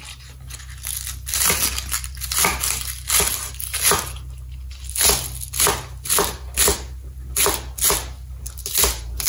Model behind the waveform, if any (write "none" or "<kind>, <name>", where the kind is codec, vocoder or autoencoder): none